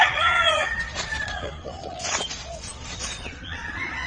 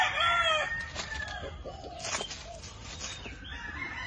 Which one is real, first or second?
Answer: second